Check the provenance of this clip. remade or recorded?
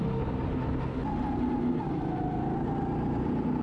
recorded